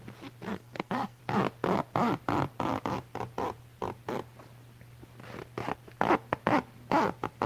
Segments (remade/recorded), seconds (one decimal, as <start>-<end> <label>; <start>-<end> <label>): 0.0-0.5 recorded; 0.5-1.2 remade; 1.2-7.5 recorded